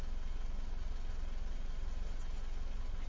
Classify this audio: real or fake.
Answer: real